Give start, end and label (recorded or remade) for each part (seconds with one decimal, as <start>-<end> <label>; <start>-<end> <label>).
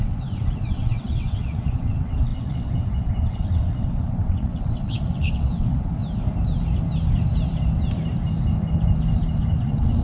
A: 0.0-6.0 remade; 6.0-9.6 recorded; 9.6-10.0 remade